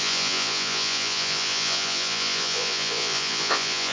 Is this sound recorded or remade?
remade